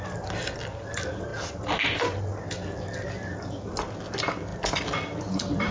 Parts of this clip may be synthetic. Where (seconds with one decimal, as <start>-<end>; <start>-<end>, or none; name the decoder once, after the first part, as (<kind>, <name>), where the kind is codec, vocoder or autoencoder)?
none

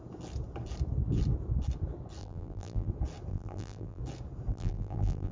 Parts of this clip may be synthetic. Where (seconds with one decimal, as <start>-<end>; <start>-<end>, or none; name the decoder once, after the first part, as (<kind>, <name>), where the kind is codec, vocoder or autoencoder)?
2.2-2.9 (vocoder, BigVGAN v2); 3.3-4.0; 4.5-5.3

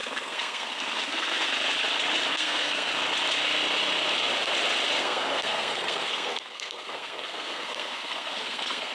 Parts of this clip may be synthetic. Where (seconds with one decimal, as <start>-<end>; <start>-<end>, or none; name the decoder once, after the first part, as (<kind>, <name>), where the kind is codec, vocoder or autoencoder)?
0.0-1.5 (codec, SNAC); 2.3-2.9; 5.0-8.9

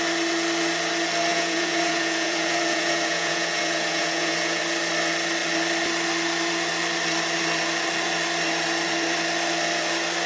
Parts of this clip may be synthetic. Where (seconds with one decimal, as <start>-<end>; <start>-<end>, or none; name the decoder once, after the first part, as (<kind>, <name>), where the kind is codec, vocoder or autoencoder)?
1.3-4.6 (vocoder, Vocos)

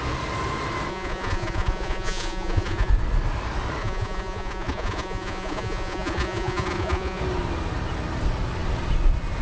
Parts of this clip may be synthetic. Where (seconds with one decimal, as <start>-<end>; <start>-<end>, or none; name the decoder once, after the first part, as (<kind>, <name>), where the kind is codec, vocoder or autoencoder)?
0.9-2.9 (vocoder, Vocos); 3.8-7.2